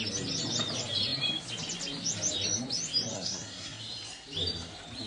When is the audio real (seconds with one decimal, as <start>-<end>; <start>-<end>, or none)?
0.0-3.1; 3.8-5.1